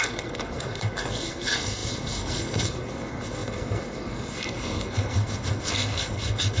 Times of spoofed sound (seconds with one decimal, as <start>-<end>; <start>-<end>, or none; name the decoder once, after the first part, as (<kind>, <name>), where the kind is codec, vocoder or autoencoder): 0.0-6.6 (codec, SNAC)